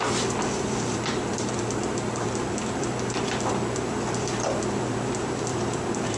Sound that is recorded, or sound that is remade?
remade